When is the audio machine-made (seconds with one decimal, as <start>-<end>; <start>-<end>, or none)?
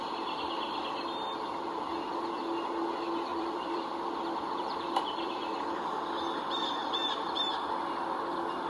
1.5-2.1; 3.3-6.2; 6.8-7.5